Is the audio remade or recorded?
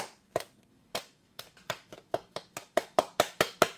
remade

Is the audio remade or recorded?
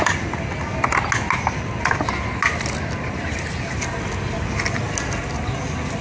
recorded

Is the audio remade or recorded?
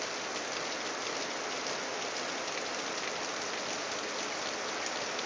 recorded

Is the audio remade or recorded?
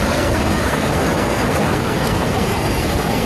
remade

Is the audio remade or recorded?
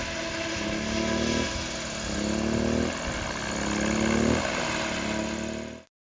recorded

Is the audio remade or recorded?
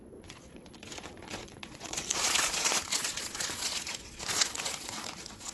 remade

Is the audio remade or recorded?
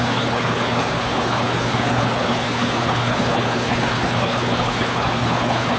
remade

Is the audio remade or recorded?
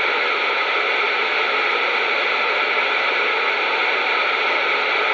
recorded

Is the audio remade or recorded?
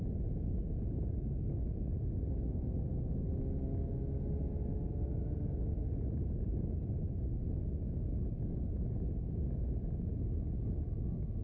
recorded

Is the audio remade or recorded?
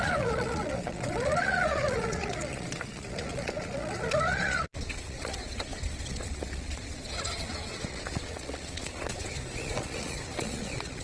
remade